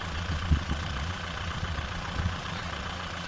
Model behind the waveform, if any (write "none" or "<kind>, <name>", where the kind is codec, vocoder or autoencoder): vocoder, Vocos